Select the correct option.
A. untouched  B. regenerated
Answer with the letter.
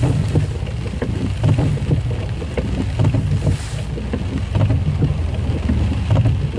A